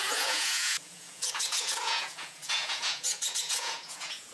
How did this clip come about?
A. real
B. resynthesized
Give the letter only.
B